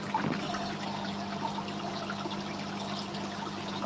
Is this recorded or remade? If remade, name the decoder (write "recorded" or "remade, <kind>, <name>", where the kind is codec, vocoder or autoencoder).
recorded